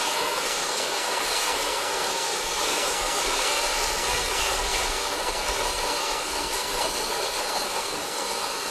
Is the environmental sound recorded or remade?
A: remade